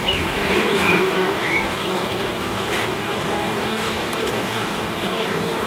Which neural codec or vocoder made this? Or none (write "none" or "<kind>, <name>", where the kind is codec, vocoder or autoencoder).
codec, DAC